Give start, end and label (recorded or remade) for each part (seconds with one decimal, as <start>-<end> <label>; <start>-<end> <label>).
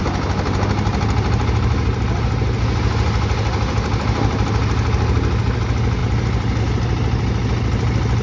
0.0-8.2 recorded